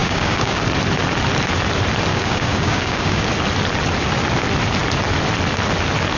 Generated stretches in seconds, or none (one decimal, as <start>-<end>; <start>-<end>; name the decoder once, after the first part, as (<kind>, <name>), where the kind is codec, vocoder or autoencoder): 0.0-0.6 (codec, DAC); 2.1-3.3